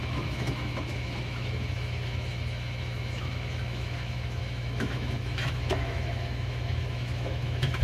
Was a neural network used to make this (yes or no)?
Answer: yes